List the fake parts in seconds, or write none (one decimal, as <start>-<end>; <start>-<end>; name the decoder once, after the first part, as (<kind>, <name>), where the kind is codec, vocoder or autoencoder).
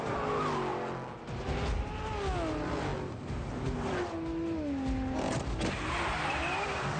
none